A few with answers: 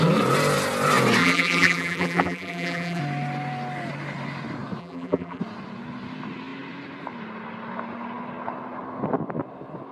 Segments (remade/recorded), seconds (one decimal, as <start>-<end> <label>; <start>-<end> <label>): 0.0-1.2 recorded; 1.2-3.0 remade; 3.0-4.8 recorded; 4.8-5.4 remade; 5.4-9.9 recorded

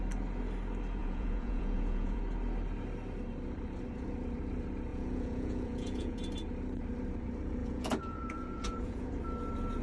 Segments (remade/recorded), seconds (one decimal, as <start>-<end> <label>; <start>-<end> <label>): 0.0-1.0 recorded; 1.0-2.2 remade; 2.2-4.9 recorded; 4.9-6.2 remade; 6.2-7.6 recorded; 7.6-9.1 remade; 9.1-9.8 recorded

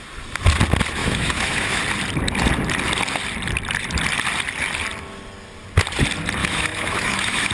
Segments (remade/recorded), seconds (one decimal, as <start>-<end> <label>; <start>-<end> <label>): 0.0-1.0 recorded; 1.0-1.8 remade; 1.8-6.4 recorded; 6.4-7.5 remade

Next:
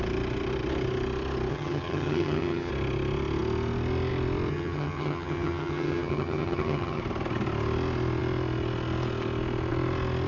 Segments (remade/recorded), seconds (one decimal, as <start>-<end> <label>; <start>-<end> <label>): 0.0-1.5 recorded; 1.5-2.7 remade; 2.7-4.5 recorded; 4.5-7.0 remade; 7.0-10.3 recorded

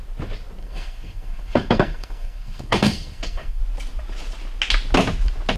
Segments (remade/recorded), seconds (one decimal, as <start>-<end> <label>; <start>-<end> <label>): 0.0-0.6 recorded; 0.6-3.6 remade; 3.6-5.6 recorded